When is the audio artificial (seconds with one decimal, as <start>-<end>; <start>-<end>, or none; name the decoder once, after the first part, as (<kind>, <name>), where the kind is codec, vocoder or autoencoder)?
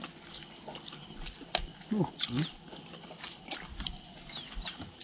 1.7-4.2 (vocoder, BigVGAN v2)